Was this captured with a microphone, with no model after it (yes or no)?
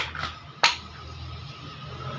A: yes